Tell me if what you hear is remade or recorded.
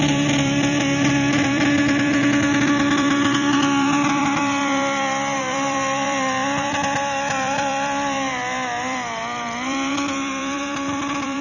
remade